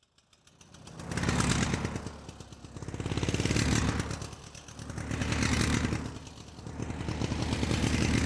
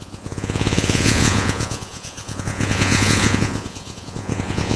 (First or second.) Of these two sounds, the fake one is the second